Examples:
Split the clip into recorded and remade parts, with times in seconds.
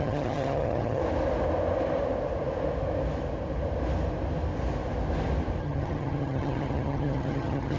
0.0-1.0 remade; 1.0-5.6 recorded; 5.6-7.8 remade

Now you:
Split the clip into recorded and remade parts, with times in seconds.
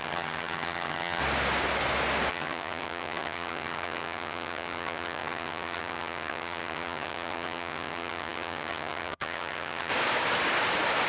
0.0-1.2 remade; 1.2-2.3 recorded; 2.3-9.9 remade; 9.9-11.1 recorded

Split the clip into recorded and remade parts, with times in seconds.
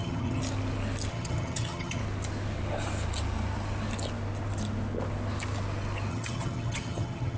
0.0-0.4 remade; 0.4-1.1 recorded; 1.1-2.0 remade; 2.0-6.1 recorded; 6.1-7.4 remade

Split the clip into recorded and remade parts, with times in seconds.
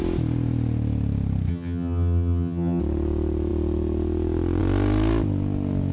0.0-1.5 recorded; 1.5-2.8 remade; 2.8-5.9 recorded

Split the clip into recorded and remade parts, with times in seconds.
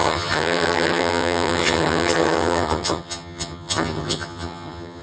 0.0-5.0 remade